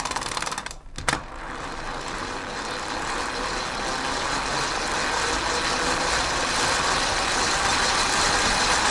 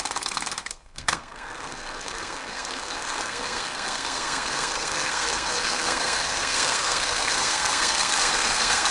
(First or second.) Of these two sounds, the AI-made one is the second